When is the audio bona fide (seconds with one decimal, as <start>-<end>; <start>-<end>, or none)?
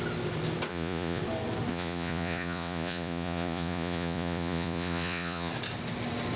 0.0-0.7; 1.2-1.7; 5.5-6.4